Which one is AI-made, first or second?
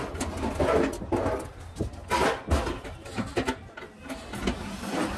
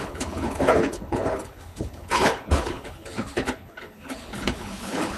second